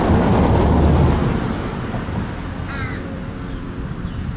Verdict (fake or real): fake